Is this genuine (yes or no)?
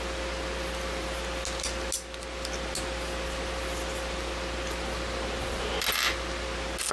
yes